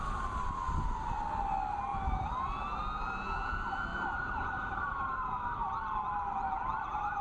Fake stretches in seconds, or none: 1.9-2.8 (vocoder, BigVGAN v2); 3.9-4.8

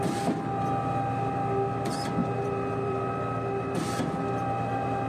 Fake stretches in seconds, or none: 2.2-3.1 (vocoder, BigVGAN v2)

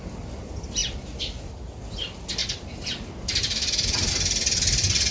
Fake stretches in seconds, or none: 0.8-1.7 (vocoder, BigVGAN v2); 2.4-4.1

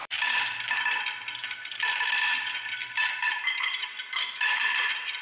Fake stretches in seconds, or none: 0.0-1.4 (vocoder, BigVGAN v2); 4.5-5.2

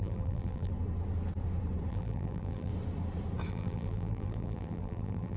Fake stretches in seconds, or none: 0.0-0.7 (vocoder, BigVGAN v2); 1.9-2.7; 3.5-5.4

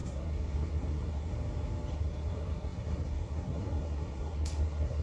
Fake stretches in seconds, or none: 0.0-1.3 (codec, SNAC); 1.9-5.0

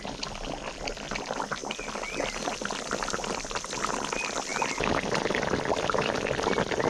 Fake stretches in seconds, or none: none

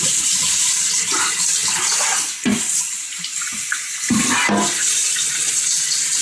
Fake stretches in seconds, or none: 0.0-1.6 (vocoder, BigVGAN v2); 5.3-6.2